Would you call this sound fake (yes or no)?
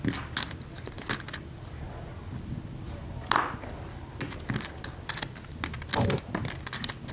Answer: no